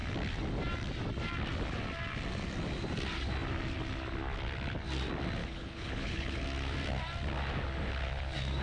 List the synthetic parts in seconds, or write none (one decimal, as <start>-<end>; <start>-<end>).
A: 5.4-6.4